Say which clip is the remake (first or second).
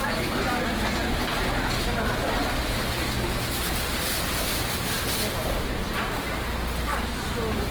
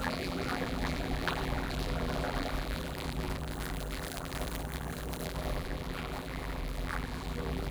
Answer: second